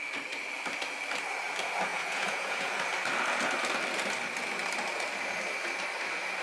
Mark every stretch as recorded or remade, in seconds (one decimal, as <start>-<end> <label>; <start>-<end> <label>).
0.0-1.9 recorded; 1.9-2.7 remade; 2.7-6.4 recorded

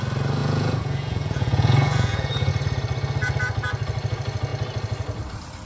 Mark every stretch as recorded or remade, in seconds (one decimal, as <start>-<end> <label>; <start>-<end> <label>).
0.0-0.4 recorded; 0.4-2.5 remade; 2.5-5.7 recorded